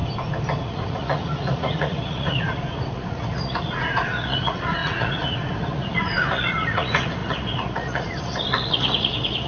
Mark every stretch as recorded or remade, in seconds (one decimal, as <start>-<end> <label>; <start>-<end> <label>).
0.0-0.6 recorded; 0.6-9.5 remade